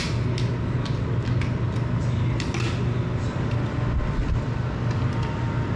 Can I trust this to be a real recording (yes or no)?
yes